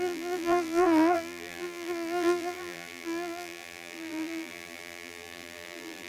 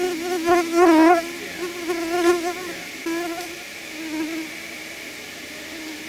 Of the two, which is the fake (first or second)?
first